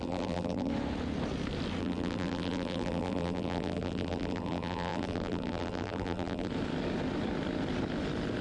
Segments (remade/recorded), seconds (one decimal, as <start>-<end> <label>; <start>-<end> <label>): 0.0-0.7 remade; 0.7-1.8 recorded; 1.8-6.5 remade; 6.5-8.4 recorded